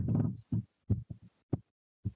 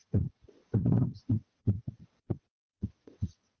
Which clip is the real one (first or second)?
first